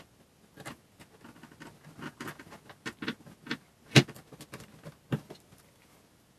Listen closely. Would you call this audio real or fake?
real